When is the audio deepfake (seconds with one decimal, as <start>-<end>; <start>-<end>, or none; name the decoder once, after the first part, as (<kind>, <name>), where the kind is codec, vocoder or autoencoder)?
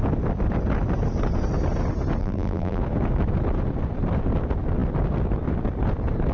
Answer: 2.2-2.8 (vocoder, BigVGAN v2)